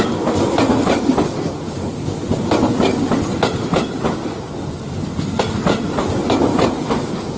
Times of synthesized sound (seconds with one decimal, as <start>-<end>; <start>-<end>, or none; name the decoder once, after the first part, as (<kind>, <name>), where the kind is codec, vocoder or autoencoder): none